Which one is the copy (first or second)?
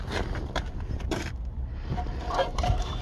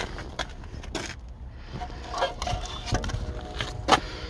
first